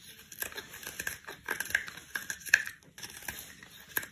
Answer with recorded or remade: recorded